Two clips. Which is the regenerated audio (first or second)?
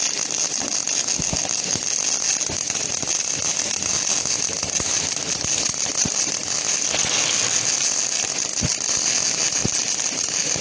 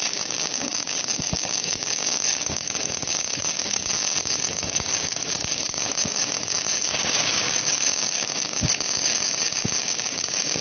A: second